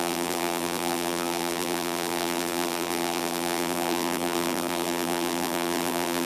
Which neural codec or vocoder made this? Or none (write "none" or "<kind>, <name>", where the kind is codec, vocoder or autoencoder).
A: vocoder, BigVGAN v2